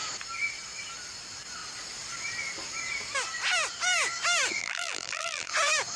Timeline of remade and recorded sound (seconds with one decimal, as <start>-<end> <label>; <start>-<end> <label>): 0.0-4.6 recorded; 4.6-5.5 remade; 5.5-6.0 recorded